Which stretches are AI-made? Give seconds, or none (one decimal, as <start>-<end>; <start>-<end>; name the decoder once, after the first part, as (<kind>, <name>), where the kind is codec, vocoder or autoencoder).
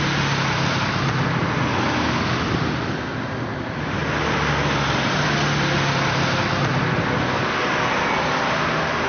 none